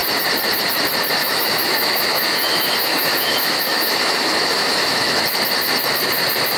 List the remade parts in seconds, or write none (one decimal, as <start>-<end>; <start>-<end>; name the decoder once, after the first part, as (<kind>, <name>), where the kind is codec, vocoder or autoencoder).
1.2-5.2 (autoencoder, DAC-VAE)